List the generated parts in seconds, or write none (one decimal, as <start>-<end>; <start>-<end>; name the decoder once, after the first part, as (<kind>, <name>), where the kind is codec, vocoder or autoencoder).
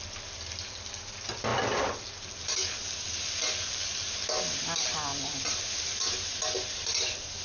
5.1-5.6 (vocoder, BigVGAN v2)